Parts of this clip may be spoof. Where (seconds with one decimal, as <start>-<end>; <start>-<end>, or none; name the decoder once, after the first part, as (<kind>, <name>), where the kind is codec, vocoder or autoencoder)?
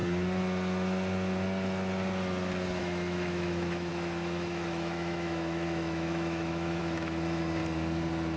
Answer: 2.8-7.6 (autoencoder, DAC-VAE)